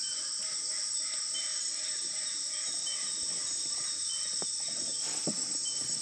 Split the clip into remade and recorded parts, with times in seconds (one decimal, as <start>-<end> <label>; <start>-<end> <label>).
0.0-1.5 recorded; 1.5-4.1 remade; 4.1-6.0 recorded